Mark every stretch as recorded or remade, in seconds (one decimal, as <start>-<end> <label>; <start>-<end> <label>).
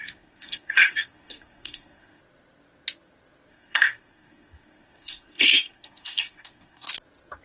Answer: 0.0-2.2 remade; 2.2-3.5 recorded; 3.5-6.9 remade; 6.9-7.4 recorded